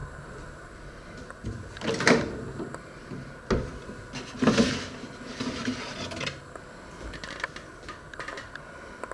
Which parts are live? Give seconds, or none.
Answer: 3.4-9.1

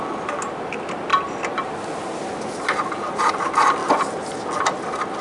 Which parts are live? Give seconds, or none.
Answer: 0.0-5.2

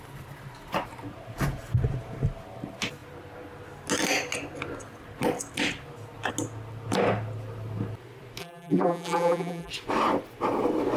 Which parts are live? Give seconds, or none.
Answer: 0.0-8.4; 9.7-11.0

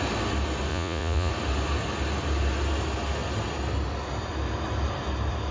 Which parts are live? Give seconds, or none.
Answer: 0.0-0.7; 1.3-5.5

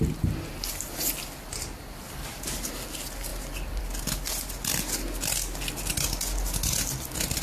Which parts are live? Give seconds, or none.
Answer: 0.0-7.4

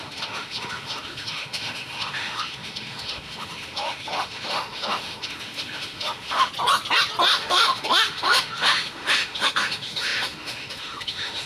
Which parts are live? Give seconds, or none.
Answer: 6.5-7.3

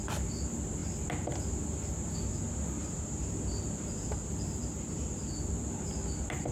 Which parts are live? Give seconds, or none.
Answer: 0.0-2.8; 5.3-6.5

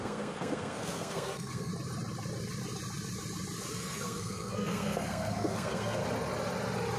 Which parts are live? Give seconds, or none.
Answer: 1.7-3.7; 6.0-7.0